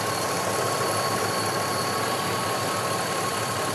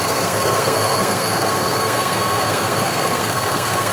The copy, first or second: second